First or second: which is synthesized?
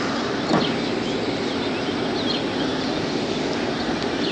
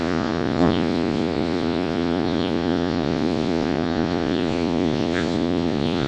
second